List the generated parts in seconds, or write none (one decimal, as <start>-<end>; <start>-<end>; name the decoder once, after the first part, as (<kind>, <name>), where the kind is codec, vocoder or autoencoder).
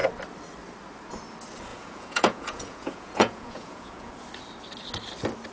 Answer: 1.7-4.1 (vocoder, Vocos)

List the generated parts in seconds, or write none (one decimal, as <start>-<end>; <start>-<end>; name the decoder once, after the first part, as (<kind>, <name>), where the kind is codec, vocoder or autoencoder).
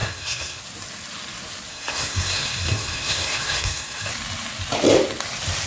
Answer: 0.0-0.6 (codec, SNAC); 1.7-4.1